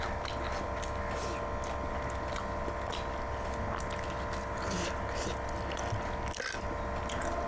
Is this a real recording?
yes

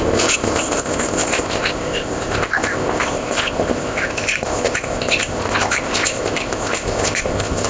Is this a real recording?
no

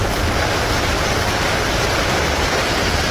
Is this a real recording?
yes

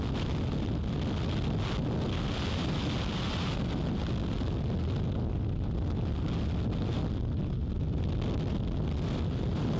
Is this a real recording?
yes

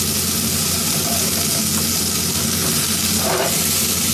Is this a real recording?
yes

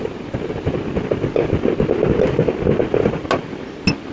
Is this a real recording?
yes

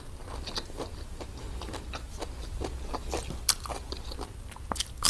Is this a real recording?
yes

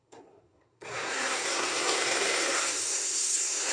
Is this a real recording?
no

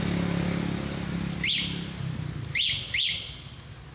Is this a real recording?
yes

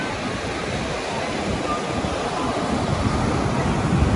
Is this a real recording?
yes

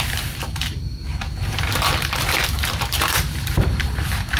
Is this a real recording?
no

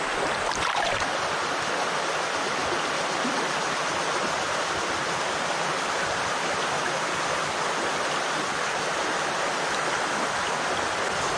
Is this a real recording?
yes